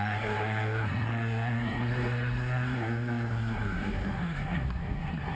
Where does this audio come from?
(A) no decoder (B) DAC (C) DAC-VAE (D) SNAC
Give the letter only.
D